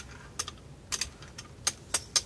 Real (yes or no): yes